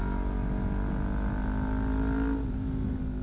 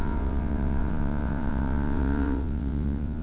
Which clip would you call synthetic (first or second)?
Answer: second